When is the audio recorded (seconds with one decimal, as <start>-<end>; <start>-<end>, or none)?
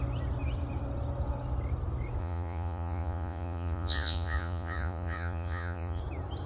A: 0.0-2.2; 6.0-6.5